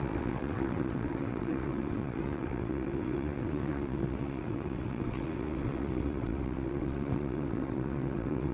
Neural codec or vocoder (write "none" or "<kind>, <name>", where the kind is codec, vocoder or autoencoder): vocoder, WaveNeXt